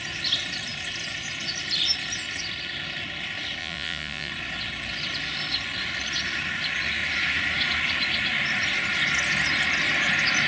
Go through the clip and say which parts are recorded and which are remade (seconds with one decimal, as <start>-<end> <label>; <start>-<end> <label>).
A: 0.0-3.6 recorded; 3.6-4.3 remade; 4.3-10.5 recorded